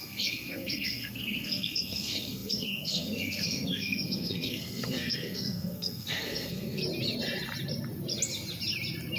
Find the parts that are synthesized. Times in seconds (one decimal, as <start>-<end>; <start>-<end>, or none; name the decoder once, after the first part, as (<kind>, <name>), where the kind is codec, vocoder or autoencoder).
0.0-6.8 (codec, SNAC)